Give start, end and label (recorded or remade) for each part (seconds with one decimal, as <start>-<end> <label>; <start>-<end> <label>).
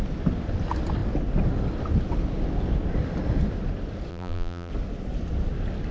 0.0-4.1 recorded; 4.1-4.7 remade; 4.7-5.9 recorded